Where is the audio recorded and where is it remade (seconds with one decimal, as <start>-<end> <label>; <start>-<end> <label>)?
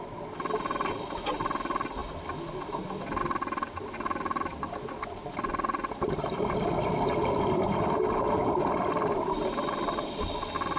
0.0-10.8 recorded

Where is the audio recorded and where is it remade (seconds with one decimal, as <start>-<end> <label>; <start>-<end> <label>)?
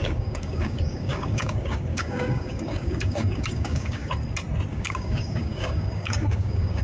0.0-4.1 remade; 4.1-4.7 recorded; 4.7-6.8 remade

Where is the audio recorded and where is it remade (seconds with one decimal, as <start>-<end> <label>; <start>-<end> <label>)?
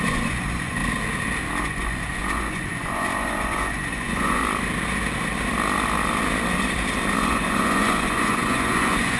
0.0-0.8 remade; 0.8-1.6 recorded; 1.6-4.4 remade; 4.4-7.2 recorded; 7.2-9.2 remade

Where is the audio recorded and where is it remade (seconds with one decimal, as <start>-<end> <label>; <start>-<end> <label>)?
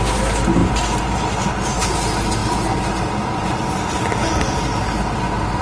0.0-0.6 recorded; 0.6-1.2 remade; 1.2-2.4 recorded; 2.4-3.7 remade; 3.7-5.6 recorded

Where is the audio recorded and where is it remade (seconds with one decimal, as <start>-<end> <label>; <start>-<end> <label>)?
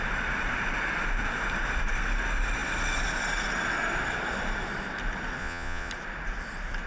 0.0-5.4 recorded; 5.4-5.9 remade; 5.9-6.9 recorded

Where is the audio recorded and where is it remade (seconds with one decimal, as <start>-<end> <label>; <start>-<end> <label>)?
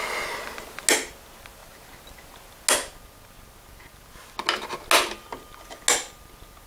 0.0-6.7 recorded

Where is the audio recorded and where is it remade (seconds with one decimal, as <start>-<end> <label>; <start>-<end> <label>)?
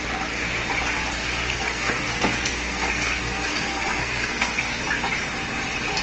0.0-1.2 recorded; 1.2-4.8 remade; 4.8-6.0 recorded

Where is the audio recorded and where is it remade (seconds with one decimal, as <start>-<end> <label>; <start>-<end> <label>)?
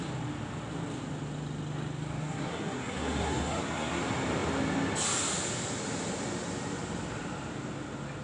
0.0-2.2 recorded; 2.2-4.0 remade; 4.0-8.2 recorded